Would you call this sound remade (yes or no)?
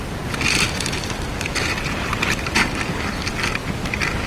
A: no